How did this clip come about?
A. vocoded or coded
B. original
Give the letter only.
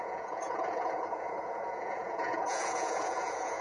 A